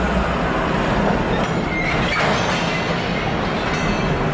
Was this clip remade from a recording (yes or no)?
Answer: no